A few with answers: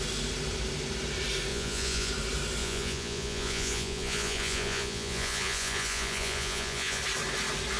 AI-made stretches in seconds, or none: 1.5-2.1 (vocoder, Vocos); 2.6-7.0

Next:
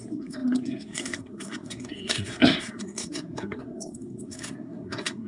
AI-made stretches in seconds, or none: 0.0-5.3 (codec, SNAC)

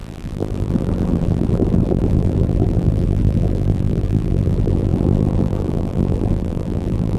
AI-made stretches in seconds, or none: 0.0-7.2 (vocoder, BigVGAN v2)

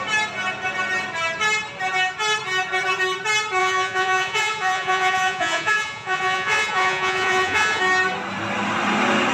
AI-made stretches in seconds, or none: 3.6-7.8 (vocoder, Vocos)